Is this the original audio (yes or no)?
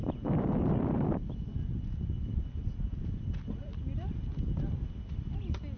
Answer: yes